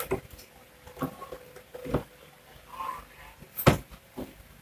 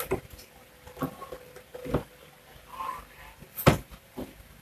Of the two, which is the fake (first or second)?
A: second